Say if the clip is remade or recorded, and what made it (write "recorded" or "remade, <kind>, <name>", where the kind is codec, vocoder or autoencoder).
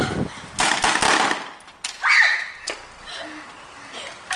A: recorded